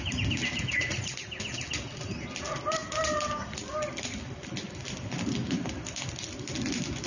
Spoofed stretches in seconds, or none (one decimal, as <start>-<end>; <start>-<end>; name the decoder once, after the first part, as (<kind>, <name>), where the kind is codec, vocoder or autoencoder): none